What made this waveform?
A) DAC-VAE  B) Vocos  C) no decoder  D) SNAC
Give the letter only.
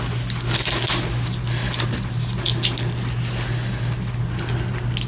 C